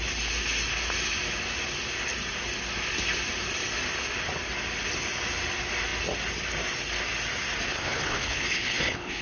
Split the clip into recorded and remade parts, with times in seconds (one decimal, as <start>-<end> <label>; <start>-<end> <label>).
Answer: 0.0-7.7 recorded; 7.7-9.2 remade

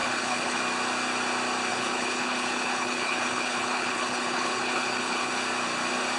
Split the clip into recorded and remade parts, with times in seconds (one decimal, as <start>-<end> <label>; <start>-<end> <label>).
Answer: 0.0-0.6 remade; 0.6-1.7 recorded; 1.7-5.3 remade; 5.3-6.2 recorded

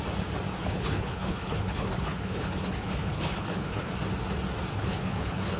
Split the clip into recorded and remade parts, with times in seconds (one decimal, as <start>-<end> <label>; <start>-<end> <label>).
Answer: 0.0-0.5 recorded; 0.5-3.9 remade; 3.9-4.7 recorded; 4.7-5.6 remade

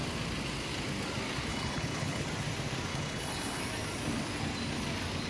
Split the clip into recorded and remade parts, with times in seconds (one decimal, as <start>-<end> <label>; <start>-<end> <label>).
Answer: 0.0-1.5 recorded; 1.5-2.2 remade; 2.2-2.9 recorded; 2.9-3.6 remade; 3.6-5.3 recorded

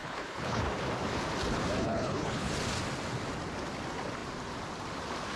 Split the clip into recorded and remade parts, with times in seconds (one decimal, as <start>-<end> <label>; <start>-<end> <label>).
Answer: 0.0-0.6 remade; 0.6-1.8 recorded; 1.8-2.5 remade; 2.5-5.4 recorded

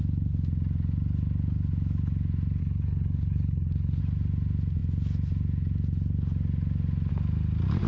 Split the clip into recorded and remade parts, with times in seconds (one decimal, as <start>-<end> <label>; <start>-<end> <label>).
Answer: 0.0-2.6 recorded; 2.6-4.0 remade; 4.0-7.9 recorded